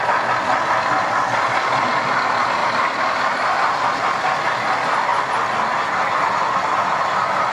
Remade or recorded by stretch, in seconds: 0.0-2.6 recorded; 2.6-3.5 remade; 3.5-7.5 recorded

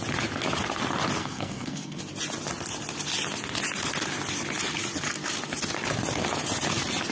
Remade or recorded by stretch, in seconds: 0.0-1.2 recorded; 1.2-2.0 remade; 2.0-7.1 recorded

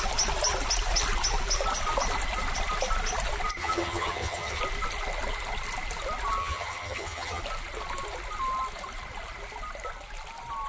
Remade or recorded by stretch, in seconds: 0.0-3.6 recorded; 3.6-4.6 remade; 4.6-6.4 recorded; 6.4-7.4 remade; 7.4-10.7 recorded

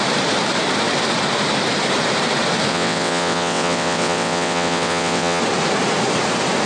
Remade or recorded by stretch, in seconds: 0.0-2.7 recorded; 2.7-5.4 remade; 5.4-6.7 recorded

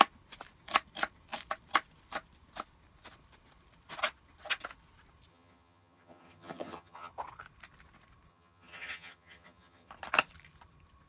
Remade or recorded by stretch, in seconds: 0.0-5.3 recorded; 5.3-7.1 remade; 7.1-8.3 recorded; 8.3-9.9 remade; 9.9-11.1 recorded

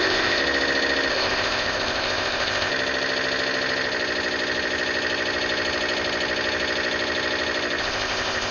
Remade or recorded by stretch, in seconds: 0.0-0.4 remade; 0.4-1.1 recorded; 1.1-2.7 remade; 2.7-7.8 recorded; 7.8-8.5 remade

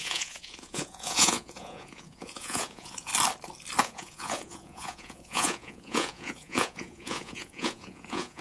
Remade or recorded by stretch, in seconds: 0.0-3.1 remade; 3.1-3.8 recorded; 3.8-8.4 remade